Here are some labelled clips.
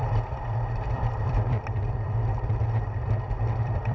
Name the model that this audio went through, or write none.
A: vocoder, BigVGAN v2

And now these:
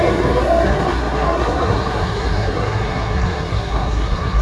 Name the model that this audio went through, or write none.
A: codec, SNAC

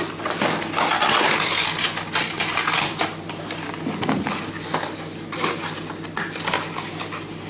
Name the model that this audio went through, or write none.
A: none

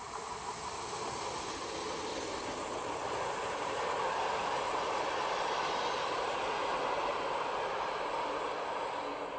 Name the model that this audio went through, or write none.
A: none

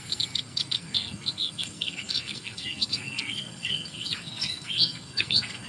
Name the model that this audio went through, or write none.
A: codec, SNAC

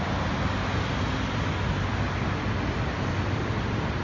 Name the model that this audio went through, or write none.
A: none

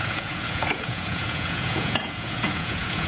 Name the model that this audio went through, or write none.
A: vocoder, Vocos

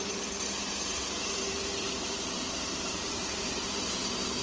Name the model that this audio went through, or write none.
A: vocoder, BigVGAN v2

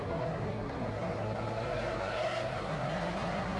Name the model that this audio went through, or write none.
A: codec, SNAC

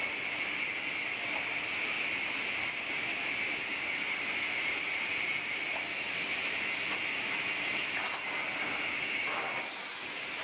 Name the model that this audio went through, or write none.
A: none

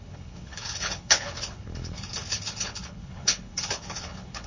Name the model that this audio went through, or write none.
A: codec, HILCodec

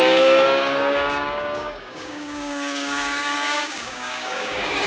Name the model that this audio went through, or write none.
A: codec, DAC